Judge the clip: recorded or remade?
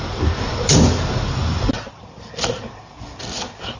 recorded